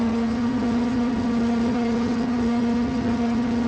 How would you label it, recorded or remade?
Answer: remade